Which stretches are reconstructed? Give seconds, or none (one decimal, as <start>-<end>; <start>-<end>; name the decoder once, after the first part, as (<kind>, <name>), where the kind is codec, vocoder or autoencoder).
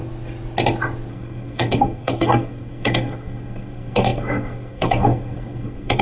1.1-6.0 (codec, SNAC)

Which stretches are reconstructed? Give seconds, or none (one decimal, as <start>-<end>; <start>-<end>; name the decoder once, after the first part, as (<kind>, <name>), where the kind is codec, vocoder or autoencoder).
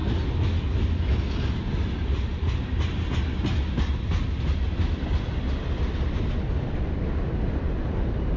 none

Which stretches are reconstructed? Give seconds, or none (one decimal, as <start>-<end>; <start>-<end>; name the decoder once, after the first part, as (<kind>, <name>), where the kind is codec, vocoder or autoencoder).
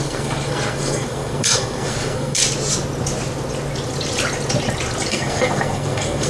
0.0-2.4 (codec, SNAC); 5.1-6.3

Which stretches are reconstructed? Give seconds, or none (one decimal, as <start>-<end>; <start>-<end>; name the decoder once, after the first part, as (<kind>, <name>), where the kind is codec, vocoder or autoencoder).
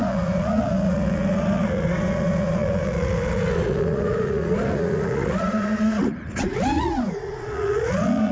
0.0-8.3 (vocoder, Vocos)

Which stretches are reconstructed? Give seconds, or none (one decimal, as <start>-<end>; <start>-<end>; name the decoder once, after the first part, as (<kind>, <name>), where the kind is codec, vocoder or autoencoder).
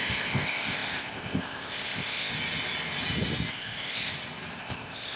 0.0-2.3 (codec, ZipCodec); 3.5-4.1; 4.6-5.2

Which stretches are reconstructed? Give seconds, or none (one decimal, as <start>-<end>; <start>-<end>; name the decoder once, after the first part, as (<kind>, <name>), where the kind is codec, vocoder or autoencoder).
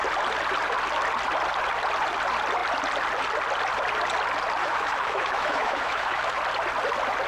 4.6-6.4 (autoencoder, DAC-VAE)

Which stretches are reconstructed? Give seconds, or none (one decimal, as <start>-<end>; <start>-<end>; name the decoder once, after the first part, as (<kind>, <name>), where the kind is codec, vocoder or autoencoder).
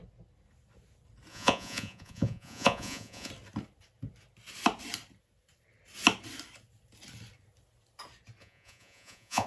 1.3-3.3 (vocoder, Vocos); 8.4-9.5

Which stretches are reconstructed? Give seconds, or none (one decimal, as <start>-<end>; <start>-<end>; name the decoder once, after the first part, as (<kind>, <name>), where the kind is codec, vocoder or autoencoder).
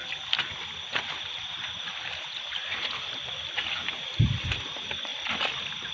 none